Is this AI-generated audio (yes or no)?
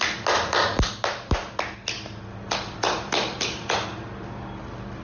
no